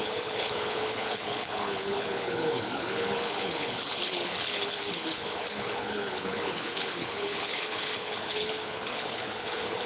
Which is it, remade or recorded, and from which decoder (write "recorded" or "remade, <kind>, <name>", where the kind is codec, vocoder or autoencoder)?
remade, codec, HILCodec